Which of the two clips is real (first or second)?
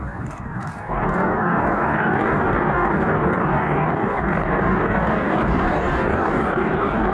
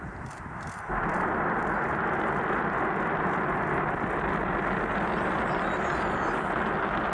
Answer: second